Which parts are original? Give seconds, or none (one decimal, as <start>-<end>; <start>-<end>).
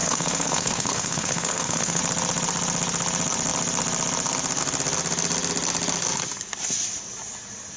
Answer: 2.0-7.8